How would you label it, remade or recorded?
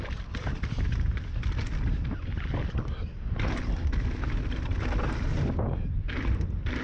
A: recorded